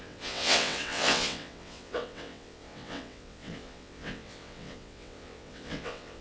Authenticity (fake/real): fake